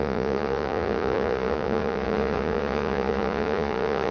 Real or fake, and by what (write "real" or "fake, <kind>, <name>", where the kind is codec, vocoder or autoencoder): fake, vocoder, Vocos